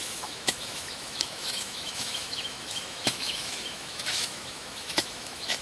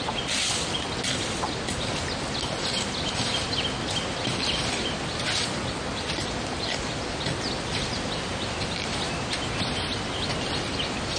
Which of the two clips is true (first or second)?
second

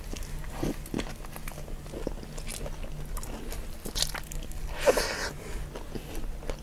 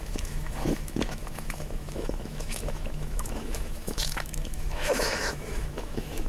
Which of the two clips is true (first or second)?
first